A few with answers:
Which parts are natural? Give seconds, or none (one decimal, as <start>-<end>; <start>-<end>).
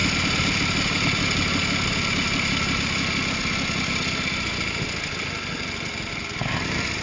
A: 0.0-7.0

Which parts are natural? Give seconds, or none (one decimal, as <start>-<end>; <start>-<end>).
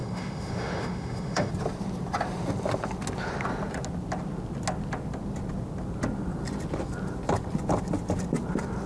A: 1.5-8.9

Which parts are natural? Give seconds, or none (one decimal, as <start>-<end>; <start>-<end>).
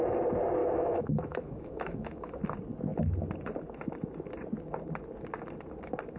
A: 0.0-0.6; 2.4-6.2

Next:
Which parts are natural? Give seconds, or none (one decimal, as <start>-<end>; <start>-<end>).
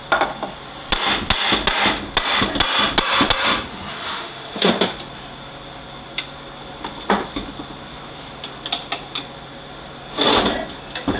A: 0.0-3.9; 4.7-11.2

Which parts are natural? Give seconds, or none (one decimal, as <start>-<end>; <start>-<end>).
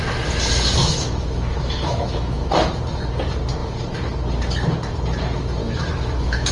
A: 0.0-0.8; 2.7-5.6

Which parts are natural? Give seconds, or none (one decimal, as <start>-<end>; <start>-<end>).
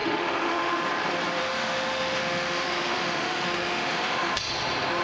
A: 0.8-1.4; 4.4-5.0